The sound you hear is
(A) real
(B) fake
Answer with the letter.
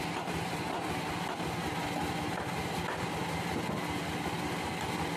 A